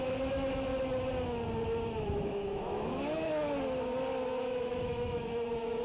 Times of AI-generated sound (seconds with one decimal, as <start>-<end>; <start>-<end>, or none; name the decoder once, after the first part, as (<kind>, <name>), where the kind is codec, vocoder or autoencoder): 0.0-0.7 (autoencoder, DAC-VAE); 2.1-3.3; 4.3-5.8